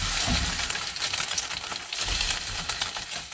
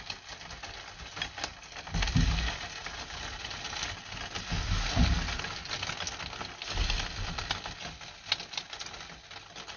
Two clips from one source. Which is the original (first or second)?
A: second